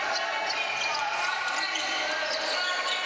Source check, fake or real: real